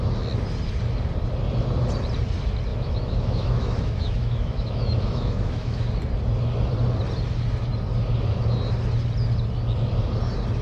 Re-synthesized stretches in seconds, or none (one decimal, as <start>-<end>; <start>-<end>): 2.7-5.9